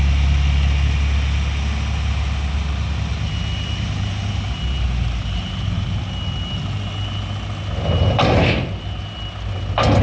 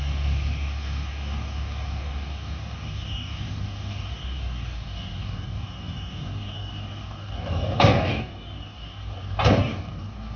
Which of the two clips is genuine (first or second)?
first